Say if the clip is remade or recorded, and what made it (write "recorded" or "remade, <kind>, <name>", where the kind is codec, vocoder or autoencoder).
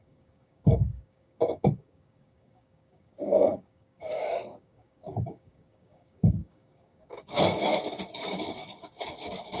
remade, codec, DAC